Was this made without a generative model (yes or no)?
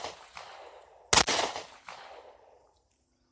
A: yes